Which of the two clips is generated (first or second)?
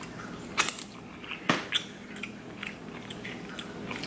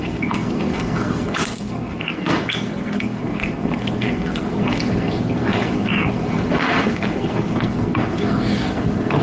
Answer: second